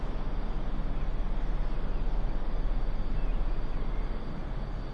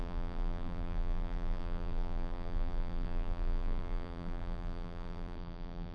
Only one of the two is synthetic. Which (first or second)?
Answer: second